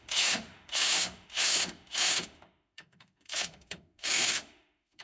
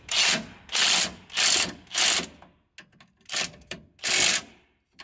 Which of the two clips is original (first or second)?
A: second